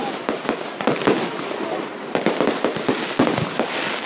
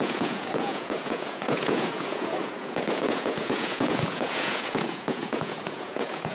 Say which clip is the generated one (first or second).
second